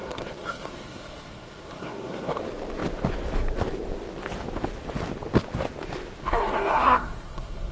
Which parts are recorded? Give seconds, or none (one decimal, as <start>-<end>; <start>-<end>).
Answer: 2.4-6.2